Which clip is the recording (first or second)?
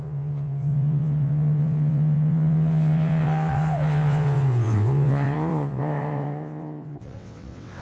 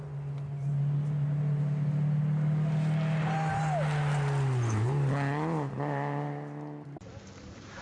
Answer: second